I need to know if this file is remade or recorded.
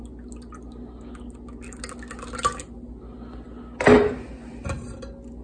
recorded